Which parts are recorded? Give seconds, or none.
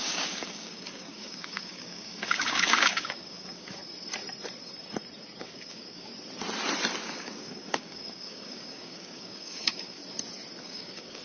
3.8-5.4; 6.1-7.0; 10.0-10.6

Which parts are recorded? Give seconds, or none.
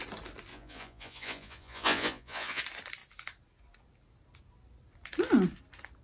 0.0-0.5; 2.6-6.0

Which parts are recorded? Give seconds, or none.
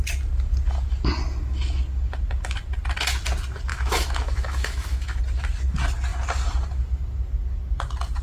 0.0-3.7; 5.2-8.2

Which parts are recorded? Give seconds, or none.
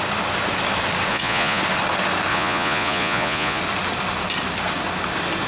0.0-1.1; 1.6-2.3; 3.6-5.5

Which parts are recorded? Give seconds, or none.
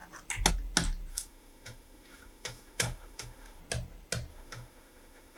0.0-1.1; 3.6-4.3